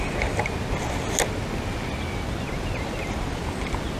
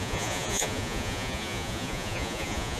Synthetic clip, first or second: second